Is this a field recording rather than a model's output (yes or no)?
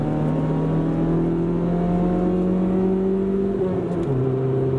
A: yes